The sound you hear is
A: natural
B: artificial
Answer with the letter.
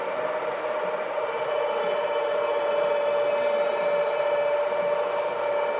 A